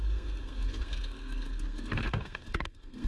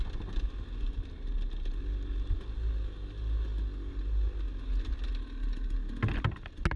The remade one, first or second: first